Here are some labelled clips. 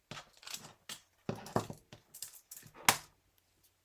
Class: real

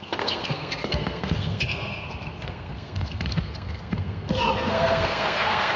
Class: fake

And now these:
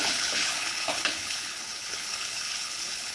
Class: fake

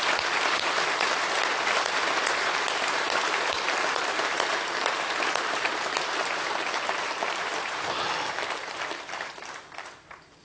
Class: fake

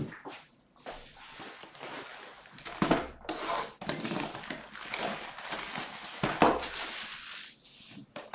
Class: real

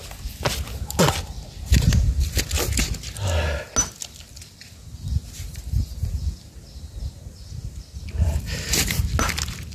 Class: real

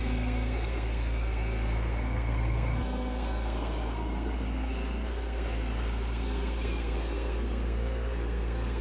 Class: fake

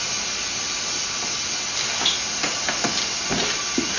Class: real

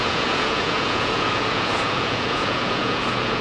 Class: fake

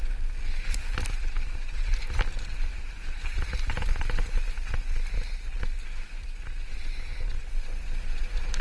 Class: real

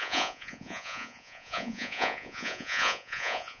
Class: fake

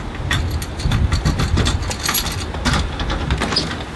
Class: real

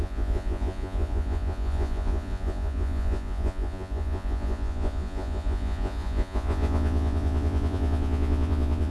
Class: fake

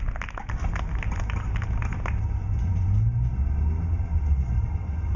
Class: real